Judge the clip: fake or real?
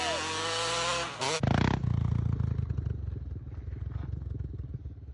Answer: real